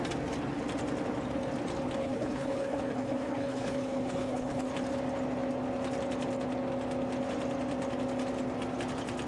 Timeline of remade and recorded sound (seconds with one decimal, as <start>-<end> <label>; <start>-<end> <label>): 0.0-2.0 recorded; 2.0-4.7 remade; 4.7-9.3 recorded